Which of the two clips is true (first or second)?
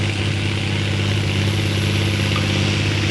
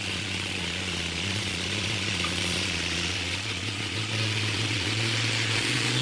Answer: first